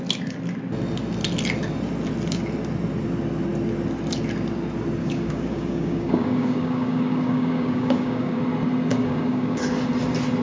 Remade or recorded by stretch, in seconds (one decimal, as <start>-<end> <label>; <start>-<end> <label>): 0.0-5.0 recorded; 5.0-8.4 remade; 8.4-8.9 recorded; 8.9-9.6 remade; 9.6-10.4 recorded